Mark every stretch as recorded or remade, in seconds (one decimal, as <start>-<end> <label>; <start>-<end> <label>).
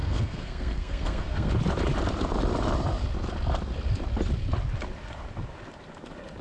0.0-1.5 remade; 1.5-6.4 recorded